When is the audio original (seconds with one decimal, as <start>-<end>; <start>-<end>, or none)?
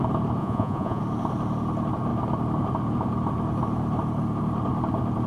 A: 0.0-0.4; 1.0-5.3